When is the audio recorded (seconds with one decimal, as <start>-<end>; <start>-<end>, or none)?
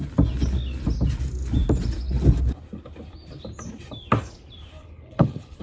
0.0-4.8